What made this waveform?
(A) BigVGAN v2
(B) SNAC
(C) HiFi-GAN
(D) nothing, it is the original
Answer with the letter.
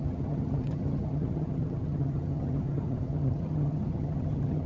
C